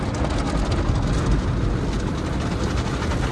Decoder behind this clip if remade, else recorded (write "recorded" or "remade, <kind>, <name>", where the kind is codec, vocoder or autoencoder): recorded